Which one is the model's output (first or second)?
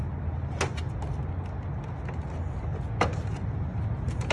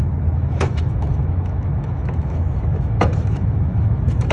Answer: second